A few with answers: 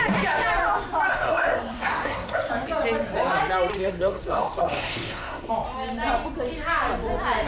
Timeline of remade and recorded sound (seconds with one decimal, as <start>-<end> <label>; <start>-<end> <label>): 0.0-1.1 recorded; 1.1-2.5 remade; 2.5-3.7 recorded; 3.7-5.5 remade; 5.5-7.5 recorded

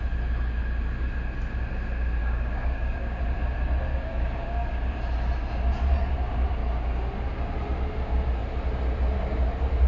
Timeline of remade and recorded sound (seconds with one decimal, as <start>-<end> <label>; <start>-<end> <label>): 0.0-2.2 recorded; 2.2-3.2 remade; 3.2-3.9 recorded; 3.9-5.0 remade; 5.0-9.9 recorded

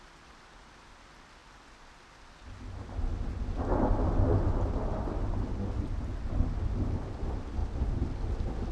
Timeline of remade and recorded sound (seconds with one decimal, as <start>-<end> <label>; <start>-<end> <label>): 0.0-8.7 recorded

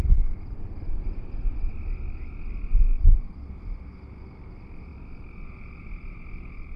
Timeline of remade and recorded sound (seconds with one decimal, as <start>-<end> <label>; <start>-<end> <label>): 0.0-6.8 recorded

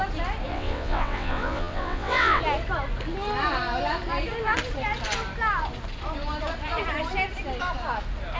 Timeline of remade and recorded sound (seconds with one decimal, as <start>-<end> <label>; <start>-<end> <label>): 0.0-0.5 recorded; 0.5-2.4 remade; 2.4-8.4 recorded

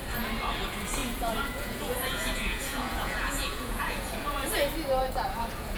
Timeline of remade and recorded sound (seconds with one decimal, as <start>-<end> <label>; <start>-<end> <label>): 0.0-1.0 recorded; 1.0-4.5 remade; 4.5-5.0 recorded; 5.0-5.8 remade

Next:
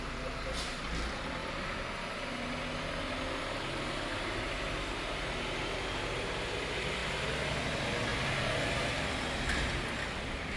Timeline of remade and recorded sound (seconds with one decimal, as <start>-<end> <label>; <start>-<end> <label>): 0.0-10.6 recorded

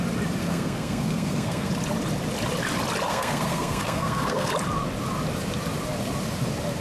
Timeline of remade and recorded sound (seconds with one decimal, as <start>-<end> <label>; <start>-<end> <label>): 0.0-0.4 recorded; 0.4-1.7 remade; 1.7-3.1 recorded; 3.1-4.5 remade; 4.5-6.8 recorded